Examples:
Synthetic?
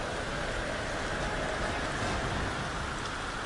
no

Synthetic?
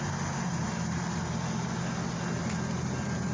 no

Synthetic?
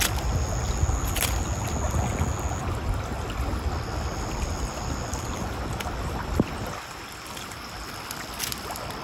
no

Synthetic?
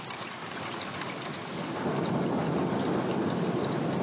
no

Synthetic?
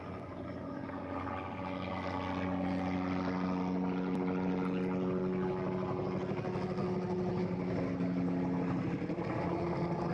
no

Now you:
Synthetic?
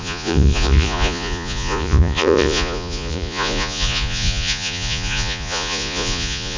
yes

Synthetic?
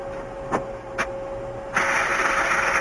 no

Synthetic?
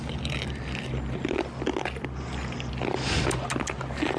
no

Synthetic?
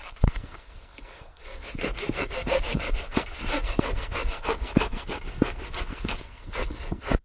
yes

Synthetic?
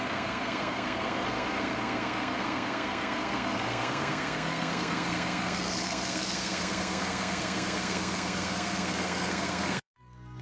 yes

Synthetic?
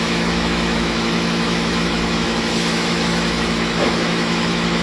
yes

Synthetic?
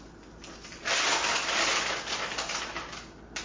no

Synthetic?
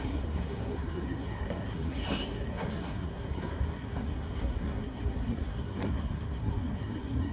yes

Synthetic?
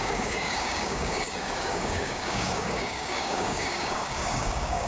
yes